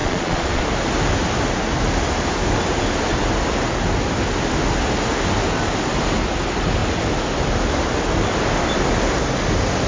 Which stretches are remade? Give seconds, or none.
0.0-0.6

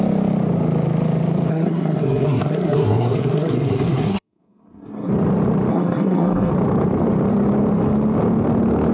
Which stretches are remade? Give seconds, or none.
1.5-5.1; 5.7-6.5

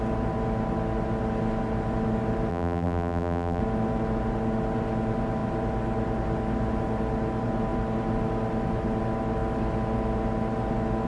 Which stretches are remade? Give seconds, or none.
2.5-3.6

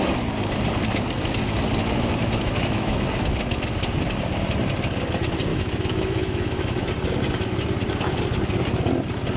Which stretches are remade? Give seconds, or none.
1.8-3.0; 5.5-6.9